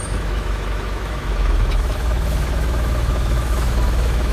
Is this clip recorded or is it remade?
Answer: remade